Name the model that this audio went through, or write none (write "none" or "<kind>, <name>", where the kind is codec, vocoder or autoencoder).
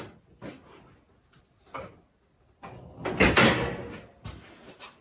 none